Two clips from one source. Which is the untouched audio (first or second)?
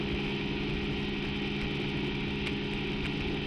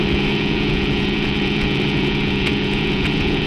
first